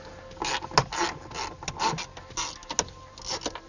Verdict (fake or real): real